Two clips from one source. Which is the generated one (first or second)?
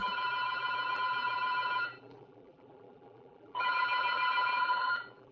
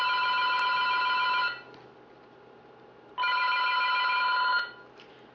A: first